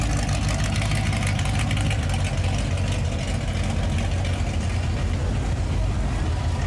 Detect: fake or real real